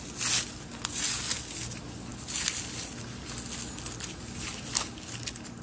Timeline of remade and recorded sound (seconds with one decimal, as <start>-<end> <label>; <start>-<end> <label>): 0.0-5.6 recorded

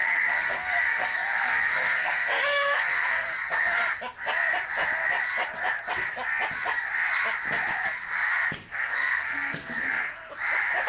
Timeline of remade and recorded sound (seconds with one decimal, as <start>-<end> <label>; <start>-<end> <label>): 0.0-3.8 remade; 3.8-8.6 recorded; 8.6-10.3 remade; 10.3-10.9 recorded

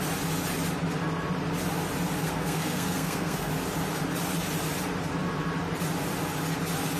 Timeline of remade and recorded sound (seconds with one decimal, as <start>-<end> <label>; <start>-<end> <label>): 0.0-2.2 recorded; 2.2-3.5 remade; 3.5-7.0 recorded

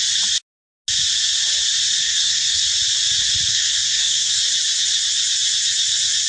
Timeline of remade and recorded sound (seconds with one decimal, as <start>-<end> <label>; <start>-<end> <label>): 0.0-2.0 recorded; 2.0-2.6 remade; 2.6-3.5 recorded; 3.5-4.4 remade; 4.4-6.3 recorded

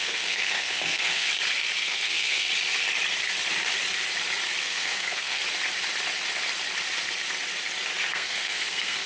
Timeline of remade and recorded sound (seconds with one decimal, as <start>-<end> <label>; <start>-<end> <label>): 0.0-1.3 remade; 1.3-1.8 recorded; 1.8-2.5 remade; 2.5-4.6 recorded; 4.6-5.4 remade; 5.4-8.1 recorded; 8.1-9.1 remade

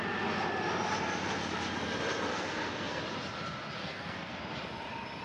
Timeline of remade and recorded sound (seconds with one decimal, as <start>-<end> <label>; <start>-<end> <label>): 0.0-2.3 recorded; 2.3-3.0 remade; 3.0-3.8 recorded; 3.8-4.4 remade; 4.4-5.2 recorded